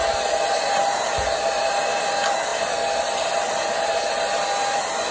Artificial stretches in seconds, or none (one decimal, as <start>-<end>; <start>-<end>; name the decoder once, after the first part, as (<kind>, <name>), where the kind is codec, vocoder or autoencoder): 2.5-4.2 (vocoder, BigVGAN v2)